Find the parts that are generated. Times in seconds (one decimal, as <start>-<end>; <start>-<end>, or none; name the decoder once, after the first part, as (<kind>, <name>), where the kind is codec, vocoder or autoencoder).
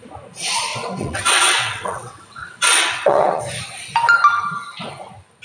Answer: 0.7-3.4 (vocoder, WaveNeXt)